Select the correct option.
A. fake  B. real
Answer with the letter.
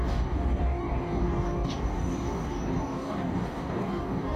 A